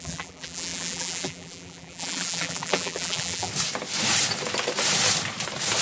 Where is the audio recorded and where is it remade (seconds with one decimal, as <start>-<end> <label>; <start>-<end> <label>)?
0.0-3.5 remade; 3.5-5.8 recorded